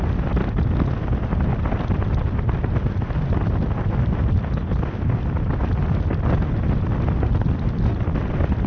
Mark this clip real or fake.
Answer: real